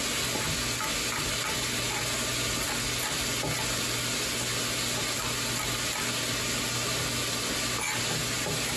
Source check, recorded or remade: recorded